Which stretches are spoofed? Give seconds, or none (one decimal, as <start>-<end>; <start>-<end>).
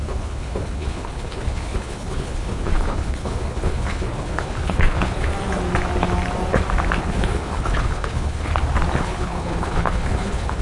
0.0-5.3; 7.0-8.5; 9.0-10.6